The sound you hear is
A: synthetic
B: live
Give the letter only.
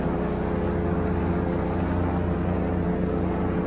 B